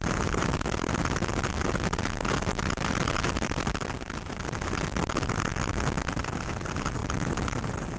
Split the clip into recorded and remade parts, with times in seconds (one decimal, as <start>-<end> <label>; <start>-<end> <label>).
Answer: 0.0-5.5 remade; 5.5-6.1 recorded; 6.1-8.0 remade